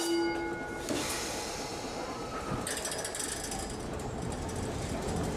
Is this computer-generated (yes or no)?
no